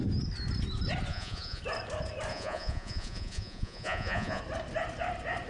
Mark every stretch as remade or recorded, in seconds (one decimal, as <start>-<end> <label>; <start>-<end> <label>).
0.0-1.1 recorded; 1.1-1.6 remade; 1.6-2.3 recorded; 2.3-4.4 remade; 4.4-5.5 recorded